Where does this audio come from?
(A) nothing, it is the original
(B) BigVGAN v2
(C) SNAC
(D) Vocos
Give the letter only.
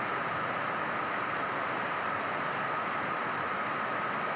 A